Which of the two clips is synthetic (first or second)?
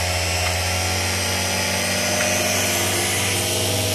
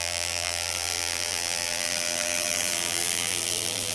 second